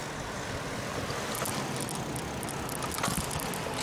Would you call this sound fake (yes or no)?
no